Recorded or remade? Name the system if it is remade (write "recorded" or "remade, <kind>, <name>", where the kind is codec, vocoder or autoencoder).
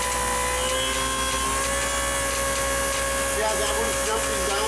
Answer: recorded